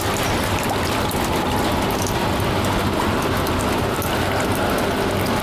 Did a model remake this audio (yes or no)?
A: no